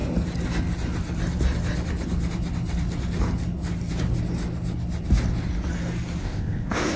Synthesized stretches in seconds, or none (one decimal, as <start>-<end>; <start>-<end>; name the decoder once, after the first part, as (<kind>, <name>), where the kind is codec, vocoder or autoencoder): 6.2-7.0 (codec, ZipCodec)